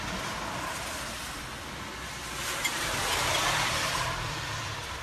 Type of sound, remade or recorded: recorded